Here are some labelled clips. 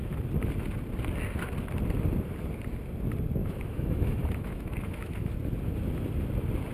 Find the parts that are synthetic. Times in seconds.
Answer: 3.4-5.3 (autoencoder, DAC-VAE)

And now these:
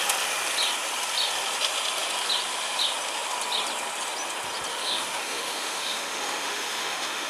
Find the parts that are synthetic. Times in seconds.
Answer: 4.7-7.3 (autoencoder, DAC-VAE)

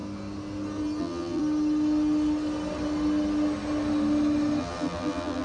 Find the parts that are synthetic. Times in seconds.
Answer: 1.0-1.4 (vocoder, BigVGAN v2); 4.6-5.4

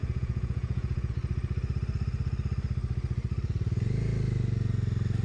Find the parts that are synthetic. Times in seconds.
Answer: 0.0-1.1 (vocoder, Vocos)

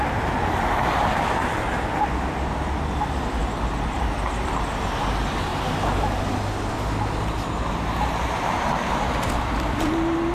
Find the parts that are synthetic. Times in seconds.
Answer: none

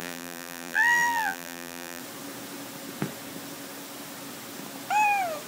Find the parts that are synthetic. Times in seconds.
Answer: 0.0-2.0 (vocoder, BigVGAN v2)